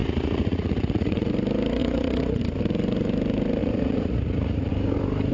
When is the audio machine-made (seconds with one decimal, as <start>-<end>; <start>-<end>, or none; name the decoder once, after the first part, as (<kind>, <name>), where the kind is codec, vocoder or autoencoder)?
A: 0.0-1.3 (vocoder, Vocos); 1.8-2.4; 3.6-4.7

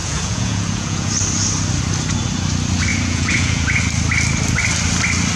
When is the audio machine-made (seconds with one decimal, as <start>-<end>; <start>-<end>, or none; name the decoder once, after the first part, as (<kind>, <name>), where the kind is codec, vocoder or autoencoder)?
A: 0.0-1.1 (vocoder, Vocos); 2.9-3.8

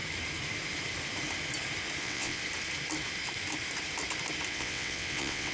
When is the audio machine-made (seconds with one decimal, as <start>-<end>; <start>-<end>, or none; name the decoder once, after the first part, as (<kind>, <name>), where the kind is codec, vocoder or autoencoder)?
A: 2.0-2.4 (vocoder, WaveNeXt); 4.5-5.5

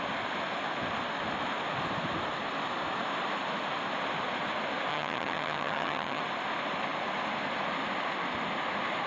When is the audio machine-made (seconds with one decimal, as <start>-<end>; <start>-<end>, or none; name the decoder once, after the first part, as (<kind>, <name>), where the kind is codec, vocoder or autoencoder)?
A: 4.9-6.2 (vocoder, HiFi-GAN)

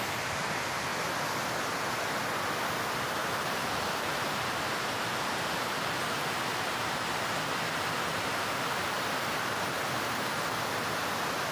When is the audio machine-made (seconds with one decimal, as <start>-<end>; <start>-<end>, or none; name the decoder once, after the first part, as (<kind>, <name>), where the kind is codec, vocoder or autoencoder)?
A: 3.2-7.3 (vocoder, BigVGAN v2); 8.1-10.3